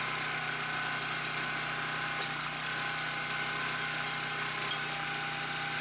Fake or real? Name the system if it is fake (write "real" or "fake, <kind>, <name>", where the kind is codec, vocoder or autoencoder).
real